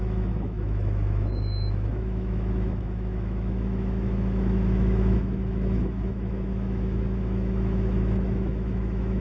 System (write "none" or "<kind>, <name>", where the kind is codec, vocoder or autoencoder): autoencoder, DAC-VAE